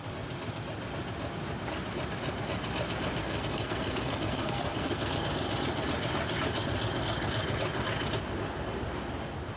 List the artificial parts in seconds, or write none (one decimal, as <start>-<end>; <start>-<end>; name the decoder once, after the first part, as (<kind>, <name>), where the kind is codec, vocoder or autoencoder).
3.2-5.1 (codec, SNAC)